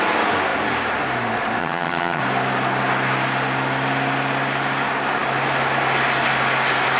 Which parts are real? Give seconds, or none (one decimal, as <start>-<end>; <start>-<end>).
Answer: 0.0-1.6; 2.2-7.0